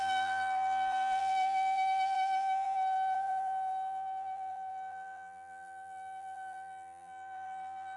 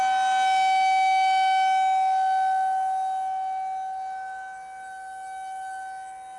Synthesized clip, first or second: first